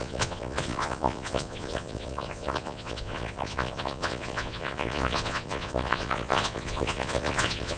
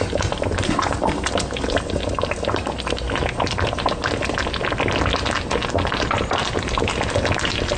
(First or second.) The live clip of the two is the second